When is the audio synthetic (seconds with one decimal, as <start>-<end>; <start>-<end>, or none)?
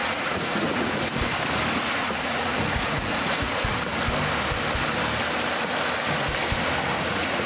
0.0-1.1; 1.8-3.7; 7.1-7.5